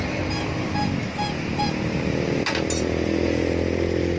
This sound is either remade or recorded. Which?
recorded